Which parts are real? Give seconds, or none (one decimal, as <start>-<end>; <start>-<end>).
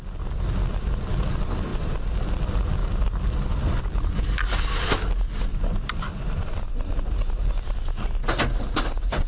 0.0-1.7; 2.3-2.8; 4.2-5.5; 6.4-9.3